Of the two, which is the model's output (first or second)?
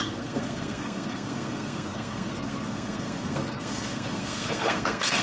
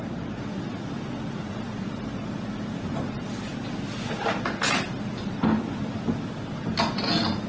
first